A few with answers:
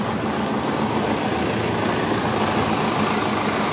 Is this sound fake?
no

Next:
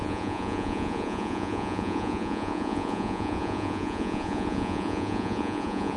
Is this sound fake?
yes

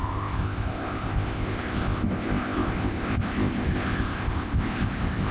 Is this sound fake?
yes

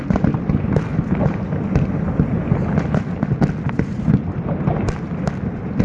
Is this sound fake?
no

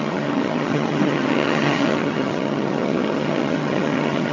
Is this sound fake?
yes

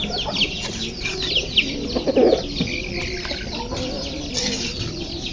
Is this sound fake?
no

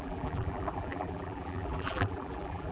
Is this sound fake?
yes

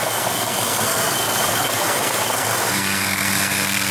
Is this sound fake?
yes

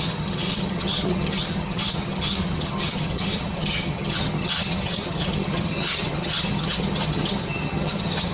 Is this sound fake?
yes